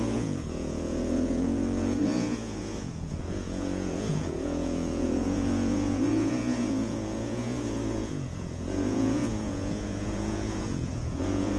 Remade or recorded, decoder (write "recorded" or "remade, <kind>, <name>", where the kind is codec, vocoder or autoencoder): remade, vocoder, Vocos